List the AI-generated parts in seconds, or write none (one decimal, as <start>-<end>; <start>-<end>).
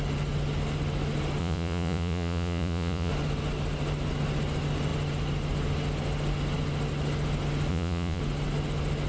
1.4-3.1; 7.7-8.2